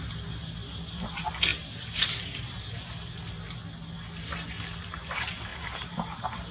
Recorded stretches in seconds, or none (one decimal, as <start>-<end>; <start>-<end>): 0.0-1.5; 2.9-5.5